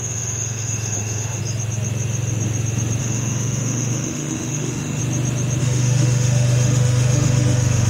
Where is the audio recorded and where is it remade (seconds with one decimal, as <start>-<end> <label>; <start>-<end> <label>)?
0.0-1.4 remade; 1.4-3.0 recorded; 3.0-5.0 remade; 5.0-5.6 recorded; 5.6-7.9 remade